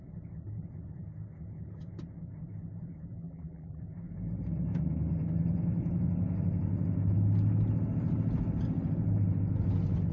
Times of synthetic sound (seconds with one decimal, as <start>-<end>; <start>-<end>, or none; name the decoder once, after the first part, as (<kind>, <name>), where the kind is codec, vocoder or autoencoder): 3.2-3.8 (vocoder, BigVGAN v2)